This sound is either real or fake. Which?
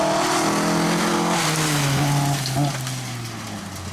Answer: real